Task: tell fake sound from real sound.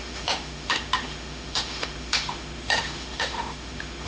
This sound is fake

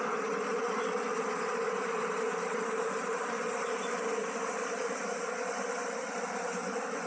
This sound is real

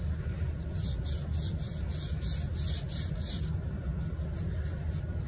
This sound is real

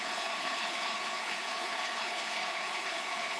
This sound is fake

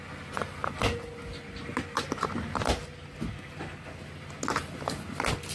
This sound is real